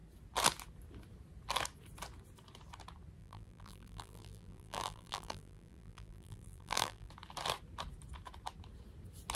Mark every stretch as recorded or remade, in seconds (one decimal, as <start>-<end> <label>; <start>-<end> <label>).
0.0-3.2 recorded; 3.2-7.1 remade; 7.1-9.4 recorded

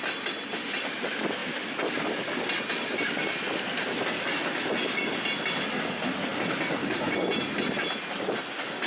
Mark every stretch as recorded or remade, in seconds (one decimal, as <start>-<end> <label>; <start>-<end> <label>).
0.0-6.8 recorded; 6.8-7.3 remade; 7.3-8.9 recorded

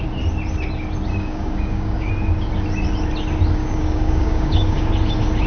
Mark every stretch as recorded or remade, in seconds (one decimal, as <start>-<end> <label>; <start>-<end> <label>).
0.0-1.1 recorded; 1.1-2.1 remade; 2.1-3.6 recorded; 3.6-4.9 remade; 4.9-5.5 recorded

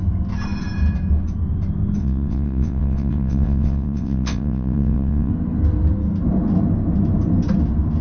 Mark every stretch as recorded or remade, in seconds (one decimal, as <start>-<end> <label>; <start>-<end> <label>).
0.0-2.0 recorded; 2.0-5.3 remade; 5.3-8.0 recorded

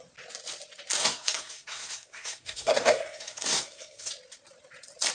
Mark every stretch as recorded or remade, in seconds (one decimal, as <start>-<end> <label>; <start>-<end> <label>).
0.0-1.0 recorded; 1.0-4.1 remade; 4.1-5.1 recorded

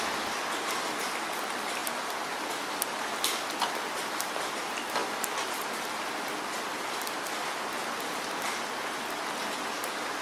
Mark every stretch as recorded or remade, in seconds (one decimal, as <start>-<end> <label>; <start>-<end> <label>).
0.0-10.2 recorded

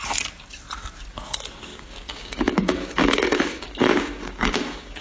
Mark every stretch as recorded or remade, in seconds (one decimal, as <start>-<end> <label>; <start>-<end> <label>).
0.0-1.7 recorded; 1.7-5.0 remade